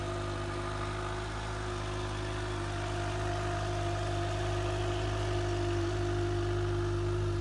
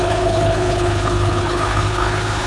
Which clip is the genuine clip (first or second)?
first